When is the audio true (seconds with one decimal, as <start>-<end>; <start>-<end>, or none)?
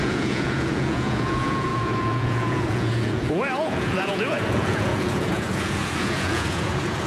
none